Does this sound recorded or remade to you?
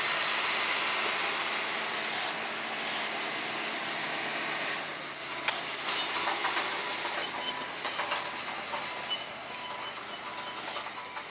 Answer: recorded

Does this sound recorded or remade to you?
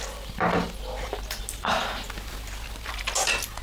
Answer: recorded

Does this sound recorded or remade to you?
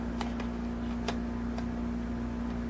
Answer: recorded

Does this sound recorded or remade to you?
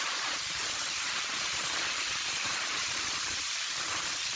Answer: remade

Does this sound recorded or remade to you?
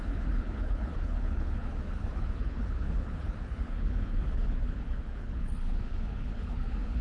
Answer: remade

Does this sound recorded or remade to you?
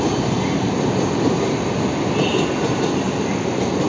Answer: recorded